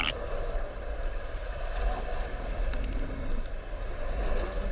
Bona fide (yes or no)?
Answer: yes